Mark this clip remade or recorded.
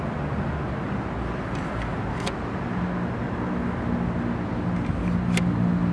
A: recorded